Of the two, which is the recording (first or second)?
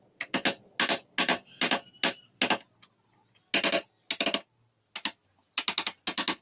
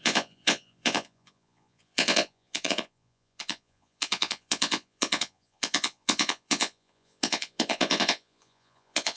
first